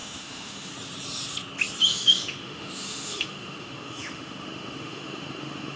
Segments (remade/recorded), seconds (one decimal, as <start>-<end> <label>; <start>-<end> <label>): 0.0-0.7 remade; 0.7-1.9 recorded; 1.9-5.8 remade